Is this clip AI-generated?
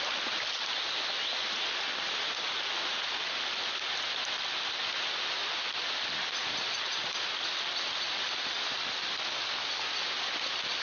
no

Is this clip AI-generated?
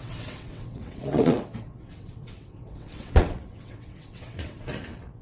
yes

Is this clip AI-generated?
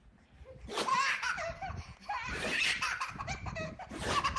no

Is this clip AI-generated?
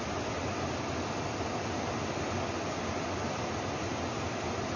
no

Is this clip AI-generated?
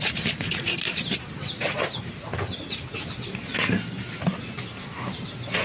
no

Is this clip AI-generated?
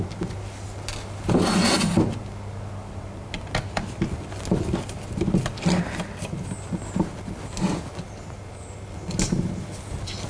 no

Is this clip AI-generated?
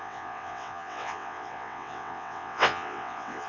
yes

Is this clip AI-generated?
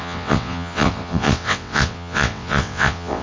yes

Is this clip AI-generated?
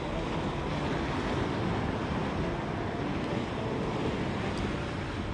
no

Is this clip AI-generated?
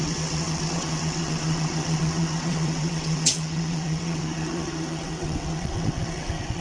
yes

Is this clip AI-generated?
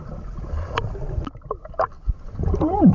no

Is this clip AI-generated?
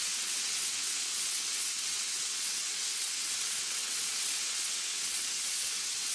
yes